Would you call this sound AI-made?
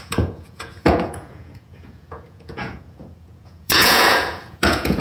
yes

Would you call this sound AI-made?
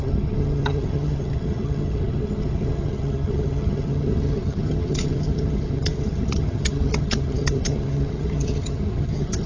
yes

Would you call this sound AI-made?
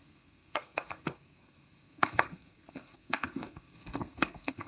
yes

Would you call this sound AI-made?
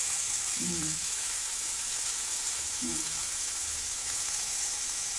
yes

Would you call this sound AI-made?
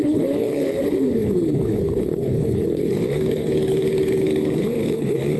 yes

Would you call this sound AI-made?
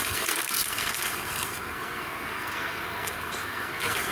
yes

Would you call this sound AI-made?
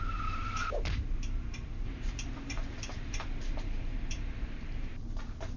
yes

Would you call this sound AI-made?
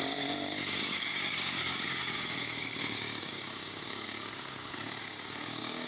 yes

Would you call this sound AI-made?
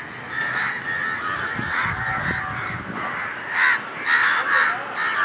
no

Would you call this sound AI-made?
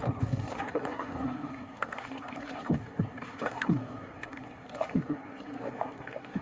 yes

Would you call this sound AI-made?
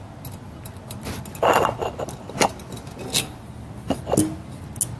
no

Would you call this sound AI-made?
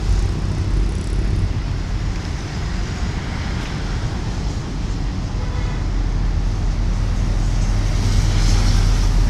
no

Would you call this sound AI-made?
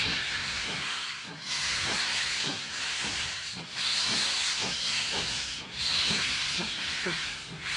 yes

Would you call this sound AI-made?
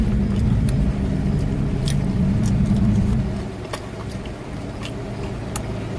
no